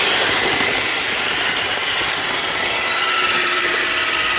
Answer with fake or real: real